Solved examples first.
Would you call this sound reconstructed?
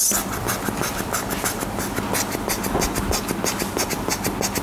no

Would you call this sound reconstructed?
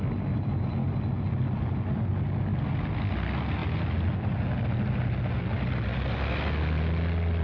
no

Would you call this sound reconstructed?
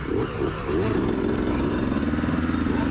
yes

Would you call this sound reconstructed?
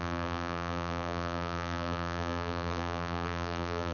yes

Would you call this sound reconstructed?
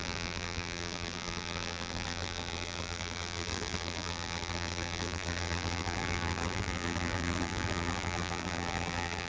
yes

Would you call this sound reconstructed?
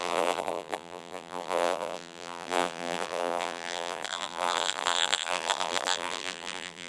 yes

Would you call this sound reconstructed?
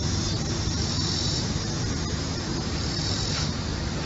yes